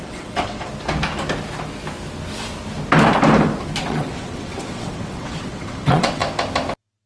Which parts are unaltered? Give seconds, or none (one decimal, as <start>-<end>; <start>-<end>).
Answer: 0.7-3.8; 6.2-7.1